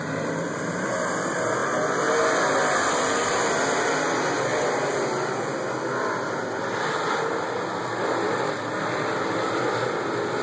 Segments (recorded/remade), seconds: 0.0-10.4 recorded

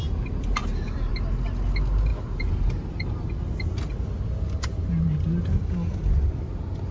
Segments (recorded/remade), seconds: 0.0-6.9 recorded

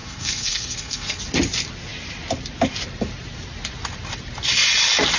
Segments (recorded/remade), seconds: 0.0-1.2 remade; 1.2-5.2 recorded

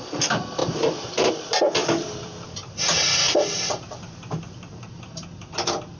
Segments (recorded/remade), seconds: 0.0-6.0 remade

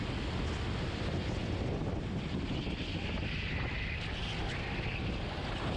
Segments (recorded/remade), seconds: 0.0-5.8 recorded

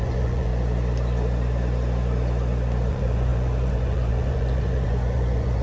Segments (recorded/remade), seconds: 0.0-0.5 remade; 0.5-2.9 recorded; 2.9-5.6 remade

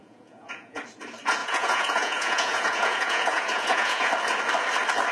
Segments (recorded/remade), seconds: 0.0-0.8 remade; 0.8-1.4 recorded; 1.4-4.1 remade; 4.1-5.1 recorded